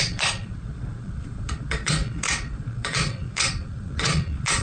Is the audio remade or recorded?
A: remade